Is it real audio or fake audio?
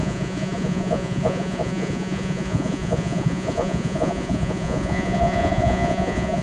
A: fake